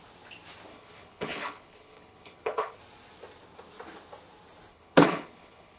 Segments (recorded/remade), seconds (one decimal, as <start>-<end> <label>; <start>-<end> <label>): 0.0-0.7 recorded; 0.7-2.8 remade; 2.8-4.7 recorded; 4.7-5.8 remade